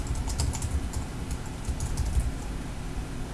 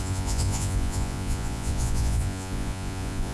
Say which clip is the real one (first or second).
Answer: first